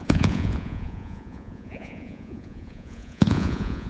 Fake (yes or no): yes